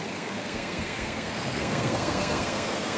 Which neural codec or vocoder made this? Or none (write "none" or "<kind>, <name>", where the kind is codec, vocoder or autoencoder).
codec, SNAC